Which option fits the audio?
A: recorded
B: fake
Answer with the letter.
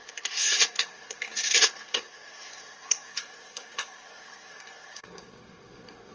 B